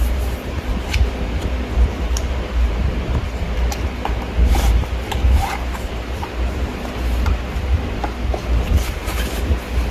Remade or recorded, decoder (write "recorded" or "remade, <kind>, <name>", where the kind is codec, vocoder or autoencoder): remade, vocoder, BigVGAN v2